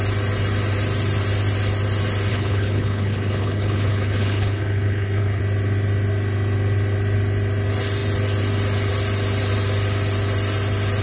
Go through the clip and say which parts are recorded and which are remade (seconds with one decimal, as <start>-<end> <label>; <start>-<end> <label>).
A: 0.0-2.3 recorded; 2.3-5.4 remade; 5.4-11.0 recorded

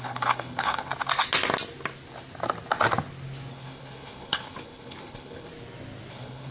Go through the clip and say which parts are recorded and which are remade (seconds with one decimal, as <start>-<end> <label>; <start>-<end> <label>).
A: 0.0-0.9 remade; 0.9-3.5 recorded; 3.5-5.5 remade; 5.5-6.1 recorded; 6.1-6.5 remade